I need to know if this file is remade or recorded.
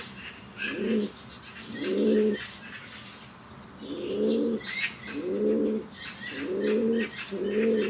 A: recorded